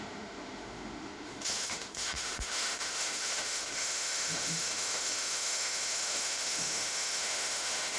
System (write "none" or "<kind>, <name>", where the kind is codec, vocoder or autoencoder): autoencoder, DAC-VAE